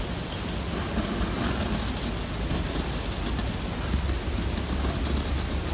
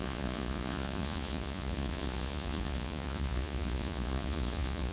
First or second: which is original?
first